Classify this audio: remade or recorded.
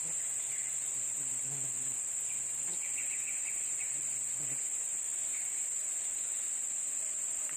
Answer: remade